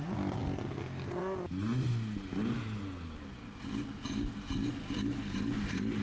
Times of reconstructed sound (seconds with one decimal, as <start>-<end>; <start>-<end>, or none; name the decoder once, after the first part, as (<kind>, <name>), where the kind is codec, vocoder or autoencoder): none